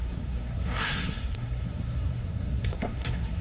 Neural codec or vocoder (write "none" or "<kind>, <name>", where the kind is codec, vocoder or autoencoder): codec, SNAC